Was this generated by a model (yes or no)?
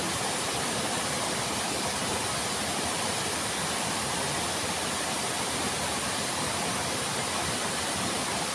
no